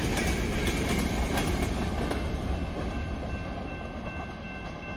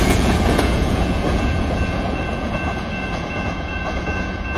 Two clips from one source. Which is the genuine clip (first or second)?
first